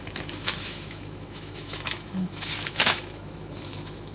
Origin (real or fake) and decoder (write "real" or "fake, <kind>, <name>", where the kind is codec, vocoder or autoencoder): fake, autoencoder, DAC-VAE